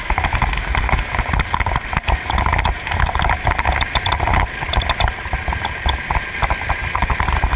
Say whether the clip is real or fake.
real